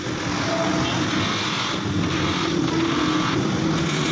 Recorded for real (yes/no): yes